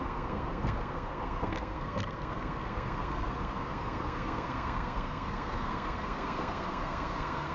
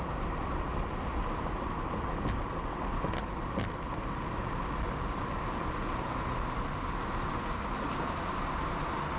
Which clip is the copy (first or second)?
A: first